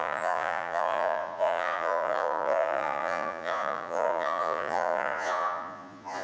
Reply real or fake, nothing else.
fake